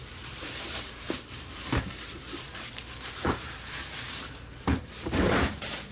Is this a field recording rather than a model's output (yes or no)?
no